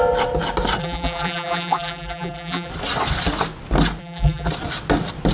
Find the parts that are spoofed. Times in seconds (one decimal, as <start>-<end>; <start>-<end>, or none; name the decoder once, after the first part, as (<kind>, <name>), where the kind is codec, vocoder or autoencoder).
0.8-2.7 (vocoder, BigVGAN v2); 4.0-4.5